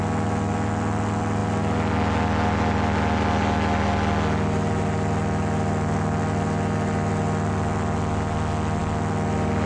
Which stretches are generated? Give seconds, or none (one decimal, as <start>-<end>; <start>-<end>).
none